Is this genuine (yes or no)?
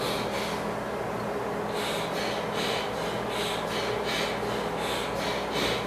yes